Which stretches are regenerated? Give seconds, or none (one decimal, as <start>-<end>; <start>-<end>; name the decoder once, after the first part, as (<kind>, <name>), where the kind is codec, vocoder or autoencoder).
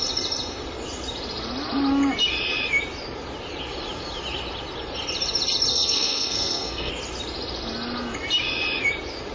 5.7-6.9 (codec, SNAC)